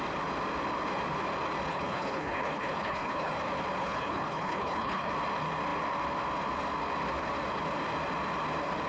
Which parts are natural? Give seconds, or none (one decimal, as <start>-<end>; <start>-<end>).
0.0-1.7; 3.3-3.8; 5.1-8.9